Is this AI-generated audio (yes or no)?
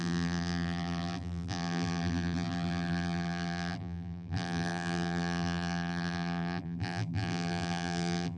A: yes